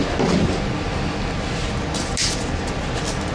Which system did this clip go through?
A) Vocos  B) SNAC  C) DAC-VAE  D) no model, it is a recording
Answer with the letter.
D